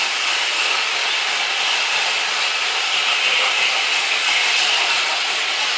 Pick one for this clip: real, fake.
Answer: real